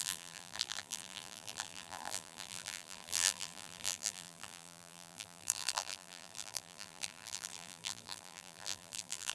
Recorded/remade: remade